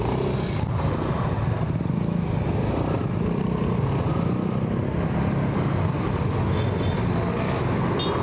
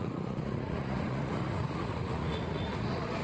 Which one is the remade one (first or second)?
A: second